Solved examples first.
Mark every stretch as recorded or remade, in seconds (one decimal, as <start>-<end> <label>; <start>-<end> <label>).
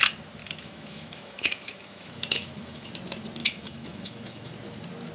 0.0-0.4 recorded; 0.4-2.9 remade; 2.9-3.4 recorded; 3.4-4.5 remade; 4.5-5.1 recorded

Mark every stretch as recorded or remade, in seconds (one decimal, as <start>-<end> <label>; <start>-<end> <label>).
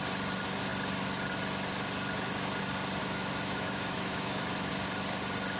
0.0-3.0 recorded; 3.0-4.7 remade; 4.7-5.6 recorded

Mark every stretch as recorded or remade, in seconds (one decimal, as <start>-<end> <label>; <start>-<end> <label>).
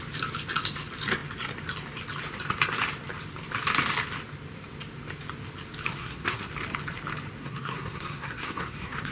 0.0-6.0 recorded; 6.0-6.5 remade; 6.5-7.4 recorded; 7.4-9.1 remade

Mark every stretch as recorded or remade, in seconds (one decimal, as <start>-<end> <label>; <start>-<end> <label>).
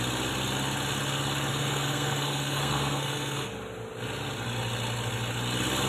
0.0-1.5 recorded; 1.5-3.5 remade; 3.5-5.9 recorded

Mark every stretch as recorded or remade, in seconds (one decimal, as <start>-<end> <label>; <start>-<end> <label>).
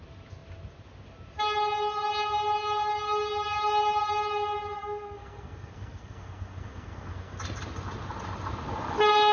0.0-4.8 recorded; 4.8-7.4 remade; 7.4-9.3 recorded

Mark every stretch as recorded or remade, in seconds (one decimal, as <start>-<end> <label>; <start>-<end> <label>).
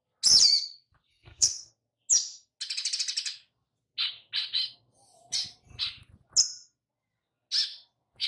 0.0-1.1 recorded; 1.1-1.7 remade; 1.7-8.3 recorded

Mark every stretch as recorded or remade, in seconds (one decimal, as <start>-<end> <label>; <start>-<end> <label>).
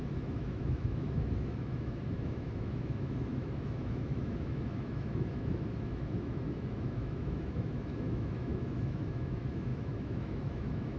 0.0-11.0 remade